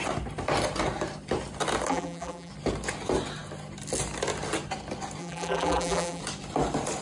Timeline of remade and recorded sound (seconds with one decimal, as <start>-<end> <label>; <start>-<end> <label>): 0.0-1.9 recorded; 1.9-2.5 remade; 2.5-5.2 recorded; 5.2-6.2 remade; 6.2-7.0 recorded